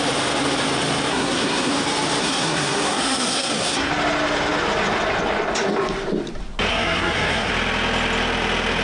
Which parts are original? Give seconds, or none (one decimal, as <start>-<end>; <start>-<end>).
0.0-1.1; 1.7-2.2; 3.9-6.7; 7.5-8.8